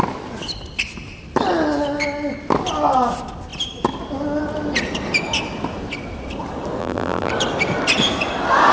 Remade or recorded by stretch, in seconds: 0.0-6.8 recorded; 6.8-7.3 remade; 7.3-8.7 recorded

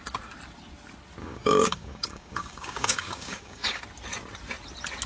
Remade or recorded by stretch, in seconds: 0.0-1.2 recorded; 1.2-3.8 remade; 3.8-5.1 recorded

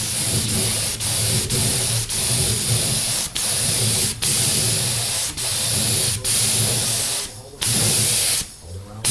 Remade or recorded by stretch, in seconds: 0.0-1.7 recorded; 1.7-3.4 remade; 3.4-9.1 recorded

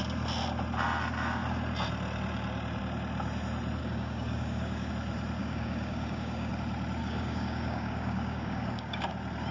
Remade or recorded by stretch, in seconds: 0.0-3.8 recorded; 3.8-4.9 remade; 4.9-5.4 recorded; 5.4-6.5 remade; 6.5-7.0 recorded; 7.0-9.1 remade; 9.1-9.5 recorded

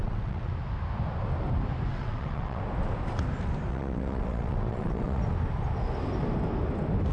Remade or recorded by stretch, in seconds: 0.0-0.5 remade; 0.5-1.9 recorded; 1.9-2.6 remade; 2.6-3.7 recorded; 3.7-5.2 remade; 5.2-7.1 recorded

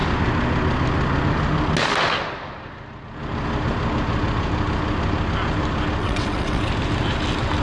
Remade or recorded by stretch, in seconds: 0.0-6.0 recorded; 6.0-6.7 remade; 6.7-7.6 recorded